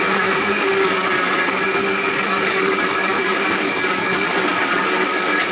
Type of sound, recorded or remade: remade